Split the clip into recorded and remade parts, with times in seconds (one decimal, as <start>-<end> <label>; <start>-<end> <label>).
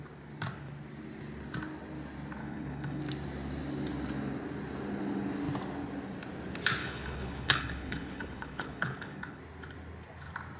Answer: 0.0-2.4 recorded; 2.4-3.0 remade; 3.0-6.8 recorded; 6.8-9.4 remade; 9.4-10.6 recorded